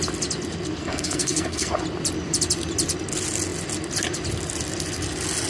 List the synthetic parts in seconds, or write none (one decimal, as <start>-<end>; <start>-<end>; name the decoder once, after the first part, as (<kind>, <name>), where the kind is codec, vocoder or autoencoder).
0.8-1.8 (codec, SNAC)